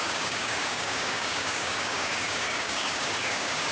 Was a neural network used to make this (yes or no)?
yes